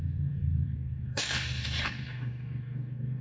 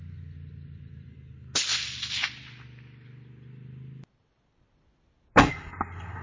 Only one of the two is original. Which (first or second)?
second